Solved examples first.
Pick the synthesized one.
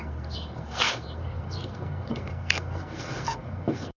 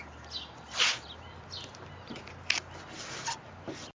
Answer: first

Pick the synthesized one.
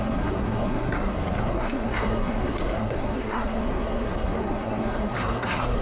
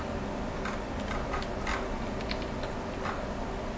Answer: first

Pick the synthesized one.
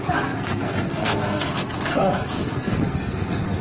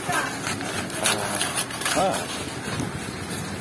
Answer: first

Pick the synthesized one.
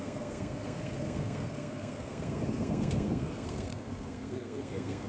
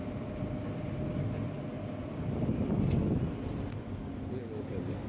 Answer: first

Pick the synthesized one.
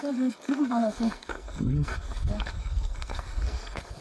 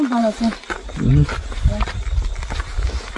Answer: first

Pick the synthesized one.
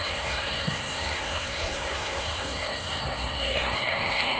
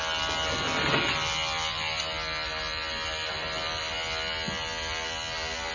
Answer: first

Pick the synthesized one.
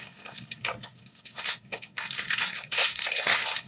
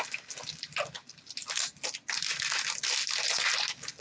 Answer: first